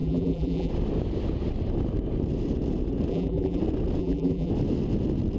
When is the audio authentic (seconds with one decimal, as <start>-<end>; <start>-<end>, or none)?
0.7-3.1; 3.6-4.0; 4.5-5.4